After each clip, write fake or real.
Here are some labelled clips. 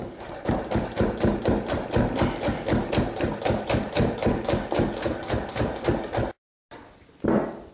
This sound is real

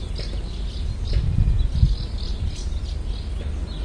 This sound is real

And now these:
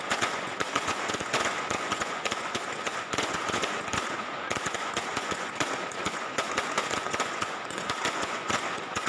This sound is fake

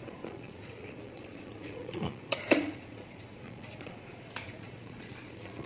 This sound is fake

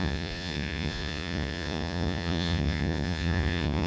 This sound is fake